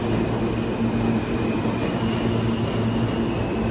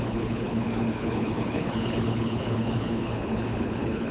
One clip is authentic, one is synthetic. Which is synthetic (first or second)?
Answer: second